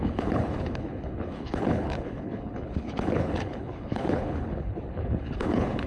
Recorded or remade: remade